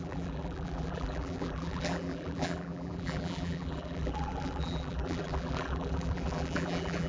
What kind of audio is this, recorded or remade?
remade